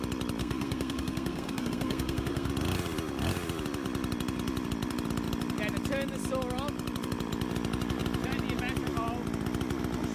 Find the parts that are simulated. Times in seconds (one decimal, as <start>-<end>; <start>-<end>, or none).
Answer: 0.4-2.5